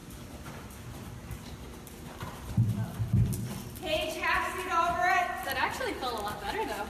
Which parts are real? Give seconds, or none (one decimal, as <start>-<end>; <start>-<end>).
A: 0.0-6.9